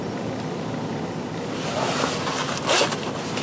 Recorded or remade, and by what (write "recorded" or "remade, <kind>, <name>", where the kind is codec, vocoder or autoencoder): recorded